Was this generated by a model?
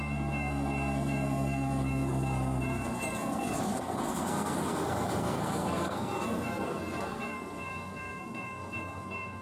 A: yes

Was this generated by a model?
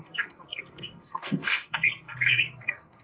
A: yes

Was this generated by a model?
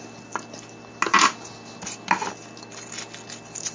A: no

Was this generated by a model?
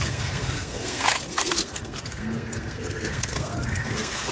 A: yes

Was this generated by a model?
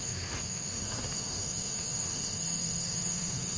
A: yes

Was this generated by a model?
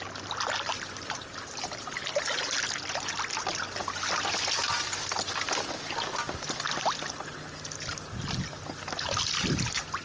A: no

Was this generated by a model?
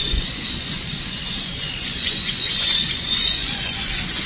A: yes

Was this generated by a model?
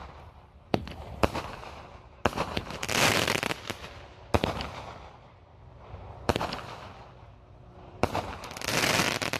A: yes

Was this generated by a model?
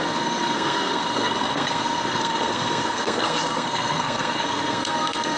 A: yes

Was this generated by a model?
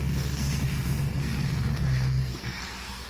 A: yes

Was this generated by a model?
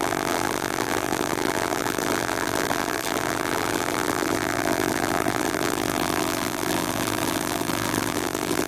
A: yes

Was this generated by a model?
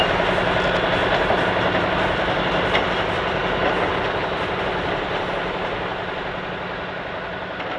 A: no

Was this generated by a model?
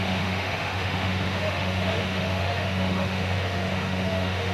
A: yes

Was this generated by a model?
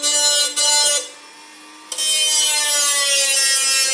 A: no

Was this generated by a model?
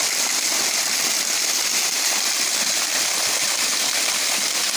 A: no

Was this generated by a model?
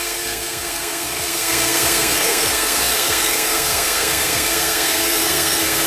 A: yes